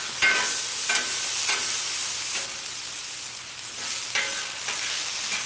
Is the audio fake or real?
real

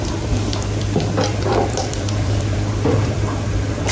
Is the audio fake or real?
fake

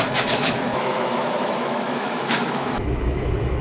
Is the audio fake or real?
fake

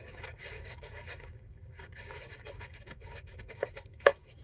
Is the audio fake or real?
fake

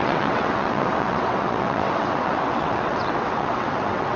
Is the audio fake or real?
fake